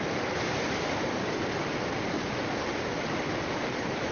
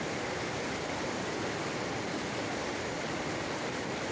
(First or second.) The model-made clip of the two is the first